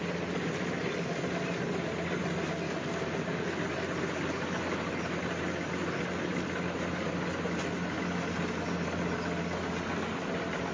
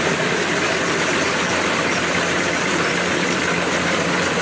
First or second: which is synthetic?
second